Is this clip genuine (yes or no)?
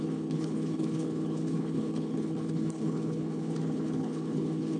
no